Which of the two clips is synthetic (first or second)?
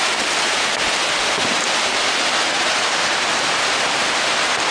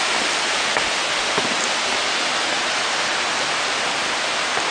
first